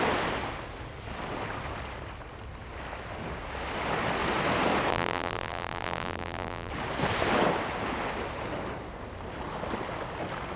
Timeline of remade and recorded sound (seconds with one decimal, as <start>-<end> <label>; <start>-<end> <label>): 0.0-4.9 recorded; 4.9-6.7 remade; 6.7-10.6 recorded